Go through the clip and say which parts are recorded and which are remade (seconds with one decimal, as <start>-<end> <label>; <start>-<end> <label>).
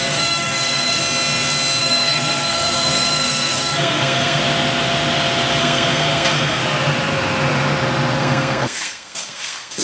0.0-1.0 remade; 1.0-1.8 recorded; 1.8-4.4 remade; 4.4-5.6 recorded; 5.6-6.6 remade; 6.6-8.2 recorded; 8.2-9.8 remade